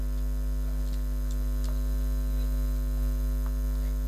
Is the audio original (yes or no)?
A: yes